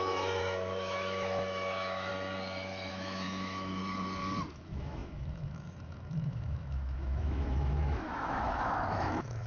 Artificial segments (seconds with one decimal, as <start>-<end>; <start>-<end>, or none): 0.0-2.1; 2.9-3.8; 4.5-9.5